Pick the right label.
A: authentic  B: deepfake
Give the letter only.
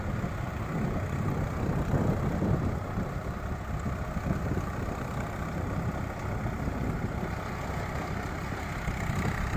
A